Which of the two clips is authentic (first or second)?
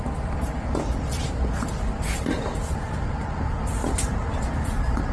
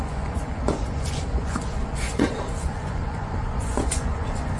first